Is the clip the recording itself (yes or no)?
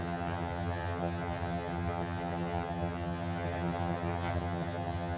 no